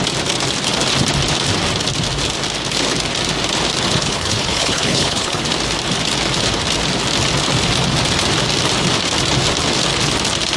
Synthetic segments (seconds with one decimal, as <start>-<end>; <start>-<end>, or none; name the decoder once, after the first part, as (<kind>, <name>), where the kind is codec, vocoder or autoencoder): 3.9-5.4 (codec, HILCodec)